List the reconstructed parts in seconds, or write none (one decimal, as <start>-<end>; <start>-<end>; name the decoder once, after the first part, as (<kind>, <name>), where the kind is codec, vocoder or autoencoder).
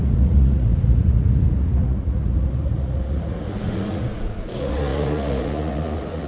0.0-6.3 (vocoder, Vocos)